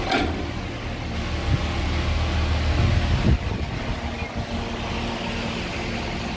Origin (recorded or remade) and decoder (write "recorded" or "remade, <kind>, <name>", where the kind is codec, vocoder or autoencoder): recorded